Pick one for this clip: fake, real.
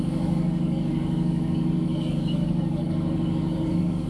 fake